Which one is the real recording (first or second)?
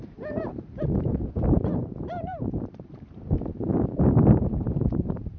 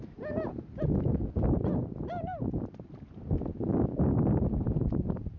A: second